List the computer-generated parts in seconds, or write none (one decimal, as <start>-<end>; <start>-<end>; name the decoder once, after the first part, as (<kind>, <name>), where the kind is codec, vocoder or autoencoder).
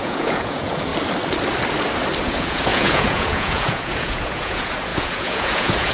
0.0-0.9 (vocoder, Vocos); 2.2-5.9